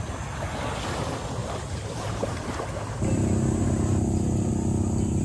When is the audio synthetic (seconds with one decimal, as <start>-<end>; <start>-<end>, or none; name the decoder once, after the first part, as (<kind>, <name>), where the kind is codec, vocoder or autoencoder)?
1.4-4.5 (vocoder, BigVGAN v2)